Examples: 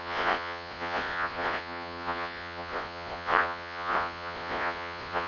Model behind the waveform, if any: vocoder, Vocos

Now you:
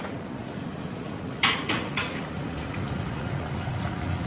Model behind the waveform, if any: vocoder, Vocos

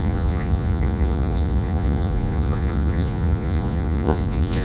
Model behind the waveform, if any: vocoder, Vocos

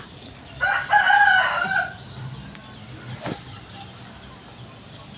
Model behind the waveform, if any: none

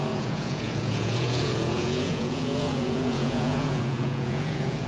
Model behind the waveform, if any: vocoder, Vocos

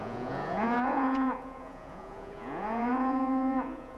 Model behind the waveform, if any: vocoder, Vocos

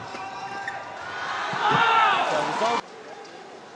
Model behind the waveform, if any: none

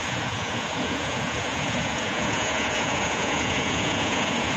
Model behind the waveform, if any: vocoder, Vocos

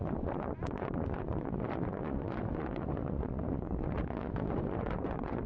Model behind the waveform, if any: vocoder, Vocos